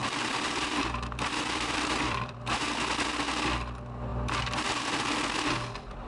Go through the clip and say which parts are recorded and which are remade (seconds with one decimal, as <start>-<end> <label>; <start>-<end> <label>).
0.0-2.5 remade; 2.5-4.1 recorded; 4.1-4.7 remade; 4.7-6.1 recorded